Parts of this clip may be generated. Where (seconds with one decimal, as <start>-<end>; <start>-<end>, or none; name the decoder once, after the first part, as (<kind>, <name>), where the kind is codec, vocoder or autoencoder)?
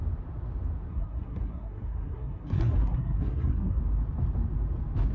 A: 0.9-3.8 (codec, SNAC)